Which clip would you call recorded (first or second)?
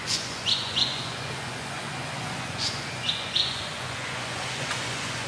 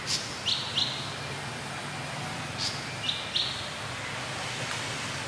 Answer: second